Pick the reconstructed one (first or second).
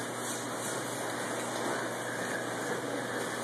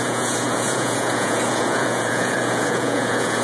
second